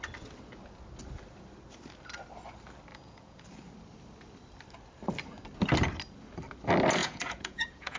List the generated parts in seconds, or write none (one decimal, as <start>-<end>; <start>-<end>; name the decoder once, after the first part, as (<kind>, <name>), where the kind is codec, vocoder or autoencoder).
2.9-3.4 (vocoder, Vocos); 7.0-8.0

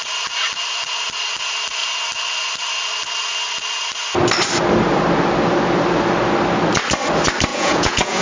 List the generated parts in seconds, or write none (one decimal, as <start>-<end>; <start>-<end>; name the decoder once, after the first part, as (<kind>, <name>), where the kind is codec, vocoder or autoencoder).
7.5-8.2 (vocoder, Vocos)

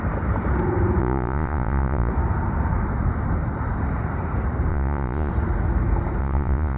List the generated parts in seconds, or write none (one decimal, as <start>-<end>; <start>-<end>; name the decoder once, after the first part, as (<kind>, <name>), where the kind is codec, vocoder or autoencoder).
1.0-2.1 (vocoder, Vocos); 4.7-5.3; 6.2-6.8

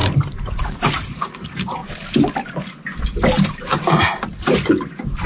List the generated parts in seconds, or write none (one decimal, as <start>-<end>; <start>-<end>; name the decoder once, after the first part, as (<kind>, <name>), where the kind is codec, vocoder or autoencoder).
0.5-1.8 (vocoder, Vocos)

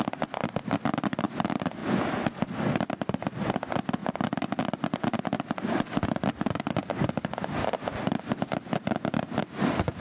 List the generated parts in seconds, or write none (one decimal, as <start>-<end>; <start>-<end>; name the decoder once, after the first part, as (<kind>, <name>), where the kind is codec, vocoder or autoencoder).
none

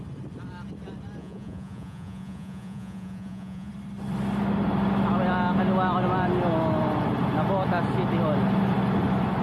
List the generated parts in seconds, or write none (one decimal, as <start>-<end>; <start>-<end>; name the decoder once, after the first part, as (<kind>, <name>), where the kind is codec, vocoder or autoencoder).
1.2-3.7 (vocoder, Vocos)

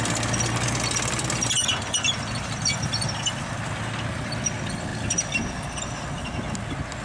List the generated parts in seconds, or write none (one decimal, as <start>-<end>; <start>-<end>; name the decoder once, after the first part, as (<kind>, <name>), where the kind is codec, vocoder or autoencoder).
none

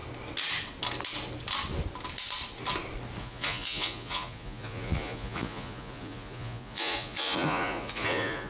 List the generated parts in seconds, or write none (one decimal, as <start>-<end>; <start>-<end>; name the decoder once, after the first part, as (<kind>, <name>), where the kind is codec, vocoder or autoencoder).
3.2-8.5 (vocoder, Vocos)